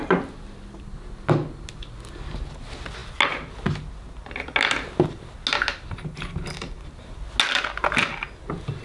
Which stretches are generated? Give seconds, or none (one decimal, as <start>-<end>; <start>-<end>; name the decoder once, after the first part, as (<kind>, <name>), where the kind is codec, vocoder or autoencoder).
none